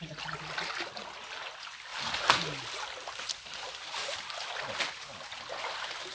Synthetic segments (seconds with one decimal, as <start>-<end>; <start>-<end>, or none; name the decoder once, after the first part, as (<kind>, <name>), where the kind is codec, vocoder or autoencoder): none